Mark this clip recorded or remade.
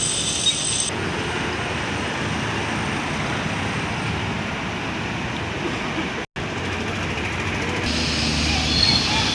recorded